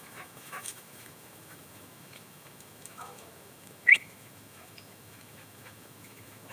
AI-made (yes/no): yes